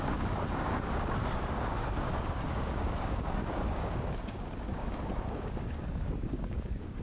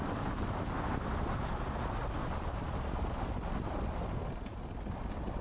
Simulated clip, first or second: first